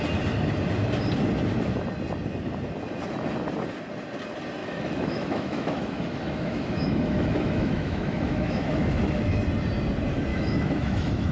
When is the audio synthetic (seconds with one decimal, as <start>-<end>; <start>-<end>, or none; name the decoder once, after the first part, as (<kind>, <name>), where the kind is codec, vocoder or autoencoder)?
4.6-9.4 (autoencoder, DAC-VAE); 10.3-11.3